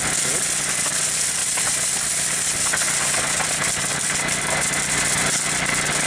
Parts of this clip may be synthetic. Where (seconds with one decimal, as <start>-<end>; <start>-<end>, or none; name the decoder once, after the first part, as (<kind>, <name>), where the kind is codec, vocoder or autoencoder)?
1.4-3.8 (vocoder, BigVGAN v2)